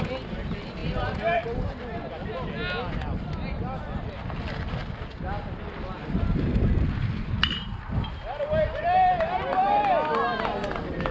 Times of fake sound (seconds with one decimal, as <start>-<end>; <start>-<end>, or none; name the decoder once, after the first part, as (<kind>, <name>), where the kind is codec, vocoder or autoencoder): none